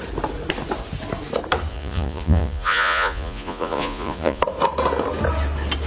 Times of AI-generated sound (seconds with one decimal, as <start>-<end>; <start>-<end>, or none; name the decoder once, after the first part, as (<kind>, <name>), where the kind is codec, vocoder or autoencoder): 1.7-4.4 (vocoder, Vocos)